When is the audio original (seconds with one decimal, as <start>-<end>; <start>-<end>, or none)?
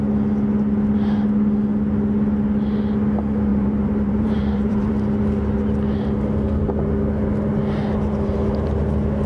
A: 0.0-3.5; 4.9-9.3